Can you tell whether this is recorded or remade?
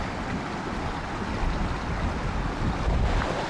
recorded